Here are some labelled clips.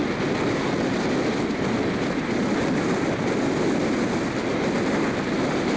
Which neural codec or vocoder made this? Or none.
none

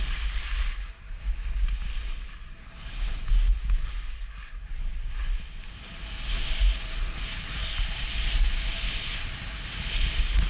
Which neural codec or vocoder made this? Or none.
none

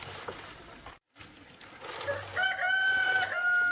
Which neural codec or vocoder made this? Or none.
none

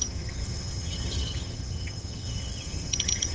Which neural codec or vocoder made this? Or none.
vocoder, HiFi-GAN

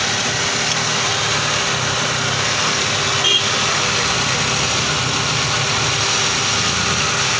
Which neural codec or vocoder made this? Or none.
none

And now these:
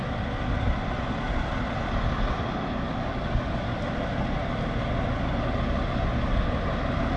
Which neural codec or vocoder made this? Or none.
none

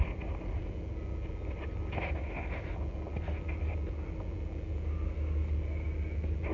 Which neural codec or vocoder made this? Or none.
none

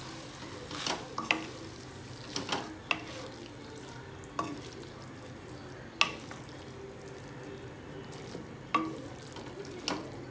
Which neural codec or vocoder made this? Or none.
none